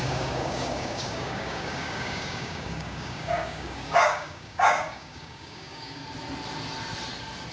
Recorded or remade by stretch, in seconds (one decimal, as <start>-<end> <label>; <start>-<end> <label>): 0.0-6.0 remade; 6.0-7.5 recorded